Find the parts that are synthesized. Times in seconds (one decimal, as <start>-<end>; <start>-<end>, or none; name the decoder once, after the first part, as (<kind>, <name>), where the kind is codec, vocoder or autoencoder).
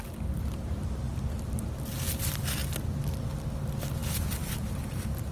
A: 4.0-5.3 (vocoder, BigVGAN v2)